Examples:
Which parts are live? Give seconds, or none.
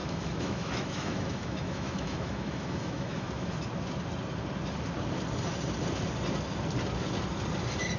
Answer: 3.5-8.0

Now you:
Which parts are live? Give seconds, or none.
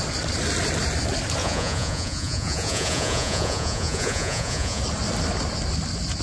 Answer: 0.0-1.4; 4.8-6.2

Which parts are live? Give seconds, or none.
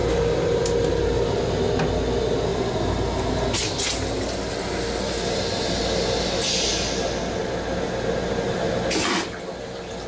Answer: 1.0-10.1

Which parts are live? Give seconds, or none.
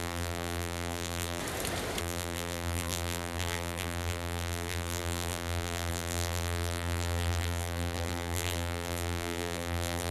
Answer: 1.4-2.0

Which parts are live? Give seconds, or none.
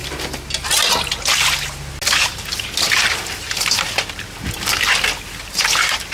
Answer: 0.0-6.1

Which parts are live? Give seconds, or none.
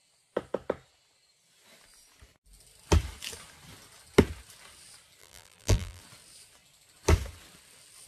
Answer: 0.0-5.2; 6.0-8.1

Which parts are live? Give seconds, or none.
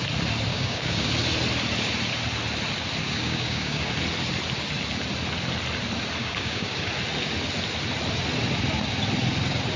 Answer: 0.0-0.5; 1.1-3.0; 3.9-6.2; 6.9-9.8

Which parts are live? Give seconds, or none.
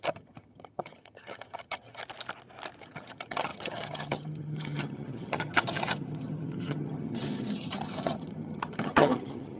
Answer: 2.0-2.8